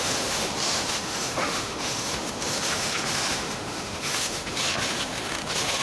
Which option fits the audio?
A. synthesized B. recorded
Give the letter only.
A